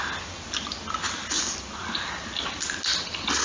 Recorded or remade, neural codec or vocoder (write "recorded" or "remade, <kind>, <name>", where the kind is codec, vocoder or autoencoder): recorded